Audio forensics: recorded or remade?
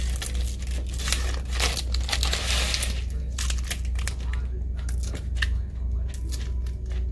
recorded